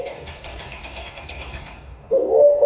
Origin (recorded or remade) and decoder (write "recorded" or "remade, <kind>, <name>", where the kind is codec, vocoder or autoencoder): remade, codec, DAC